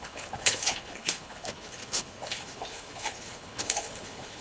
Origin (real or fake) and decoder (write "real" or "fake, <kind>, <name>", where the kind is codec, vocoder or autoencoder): fake, codec, HILCodec